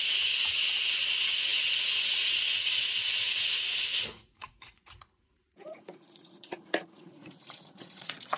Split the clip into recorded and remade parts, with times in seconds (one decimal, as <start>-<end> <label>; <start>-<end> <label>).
0.0-8.4 remade